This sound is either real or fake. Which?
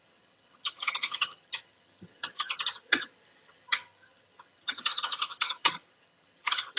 fake